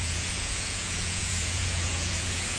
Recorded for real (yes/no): no